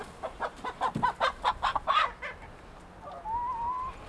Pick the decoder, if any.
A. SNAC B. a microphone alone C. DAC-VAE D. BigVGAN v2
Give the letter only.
B